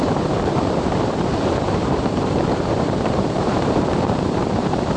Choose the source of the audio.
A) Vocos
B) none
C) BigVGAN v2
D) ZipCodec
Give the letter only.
C